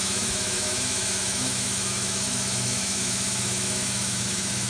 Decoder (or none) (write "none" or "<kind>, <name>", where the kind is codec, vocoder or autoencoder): autoencoder, DAC-VAE